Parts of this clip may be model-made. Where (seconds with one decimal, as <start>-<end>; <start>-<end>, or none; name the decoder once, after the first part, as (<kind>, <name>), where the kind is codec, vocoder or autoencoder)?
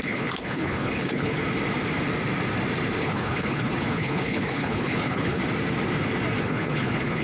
0.0-1.4 (codec, HILCodec); 3.0-5.4; 6.4-7.2